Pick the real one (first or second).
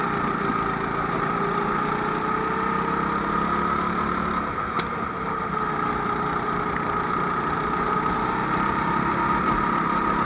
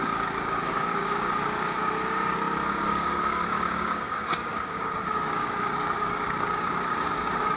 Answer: first